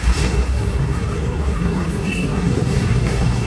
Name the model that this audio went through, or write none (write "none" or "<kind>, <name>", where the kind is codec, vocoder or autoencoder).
codec, SNAC